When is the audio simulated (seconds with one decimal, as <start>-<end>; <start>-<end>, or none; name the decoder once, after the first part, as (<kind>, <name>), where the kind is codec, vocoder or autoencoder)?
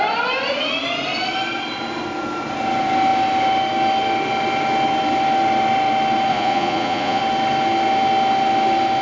6.3-7.2 (vocoder, Vocos)